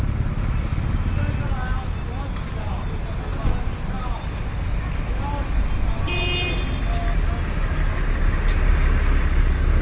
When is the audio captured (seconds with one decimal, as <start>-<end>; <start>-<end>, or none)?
0.0-9.8